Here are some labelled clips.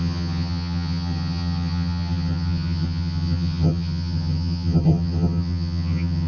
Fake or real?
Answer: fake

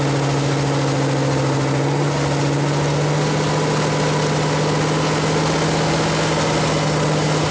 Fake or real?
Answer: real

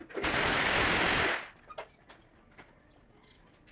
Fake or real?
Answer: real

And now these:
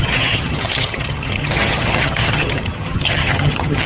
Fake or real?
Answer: fake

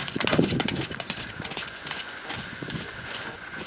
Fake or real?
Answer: fake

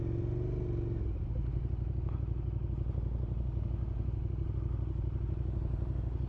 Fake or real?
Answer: real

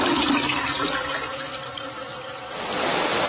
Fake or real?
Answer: real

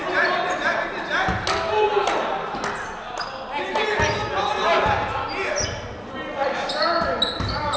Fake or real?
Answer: real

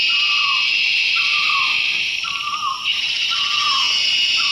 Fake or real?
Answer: fake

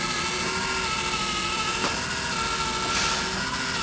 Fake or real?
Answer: real